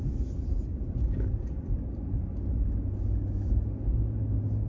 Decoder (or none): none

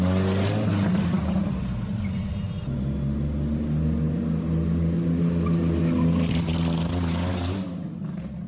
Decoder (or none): none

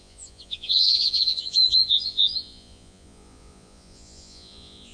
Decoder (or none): vocoder, Vocos